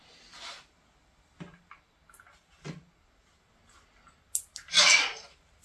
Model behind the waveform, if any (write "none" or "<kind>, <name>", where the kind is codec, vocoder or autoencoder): none